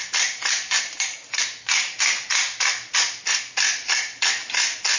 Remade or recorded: recorded